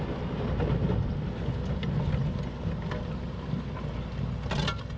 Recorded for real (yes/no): yes